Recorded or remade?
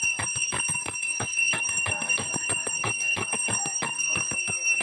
remade